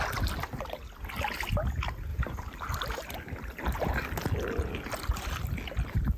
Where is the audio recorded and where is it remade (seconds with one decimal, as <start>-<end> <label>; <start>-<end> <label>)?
0.0-6.2 recorded